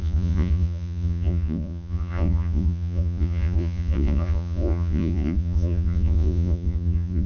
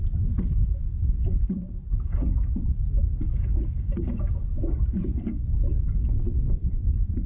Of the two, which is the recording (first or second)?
second